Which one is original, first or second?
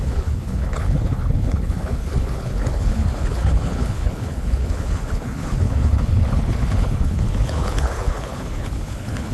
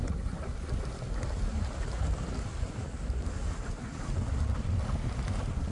second